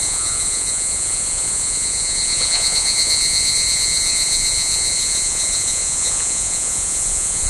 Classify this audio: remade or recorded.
remade